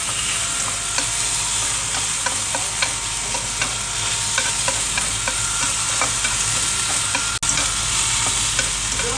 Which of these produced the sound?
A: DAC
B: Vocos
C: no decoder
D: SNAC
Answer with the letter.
C